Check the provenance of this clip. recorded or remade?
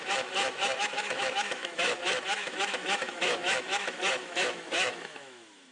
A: remade